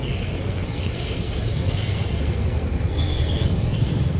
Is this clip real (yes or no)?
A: no